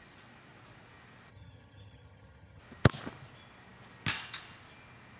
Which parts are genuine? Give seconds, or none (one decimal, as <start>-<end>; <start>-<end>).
0.0-1.3; 2.6-5.2